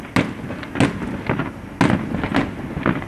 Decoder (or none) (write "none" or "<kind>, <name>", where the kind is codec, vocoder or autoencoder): none